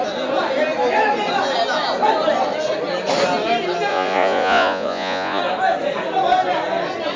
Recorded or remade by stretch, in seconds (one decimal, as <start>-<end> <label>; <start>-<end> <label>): 0.0-3.9 recorded; 3.9-5.4 remade; 5.4-7.2 recorded